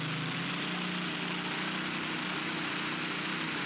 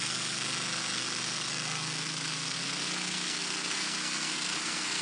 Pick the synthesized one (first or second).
second